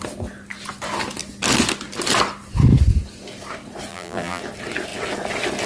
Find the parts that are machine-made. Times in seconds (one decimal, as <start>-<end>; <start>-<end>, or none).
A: 3.9-4.4